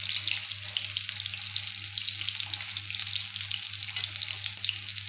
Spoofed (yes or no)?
no